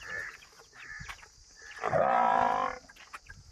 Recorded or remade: recorded